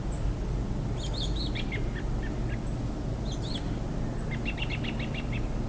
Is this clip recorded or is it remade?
recorded